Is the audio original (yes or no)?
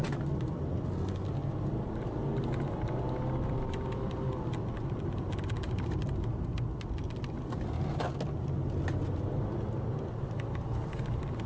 yes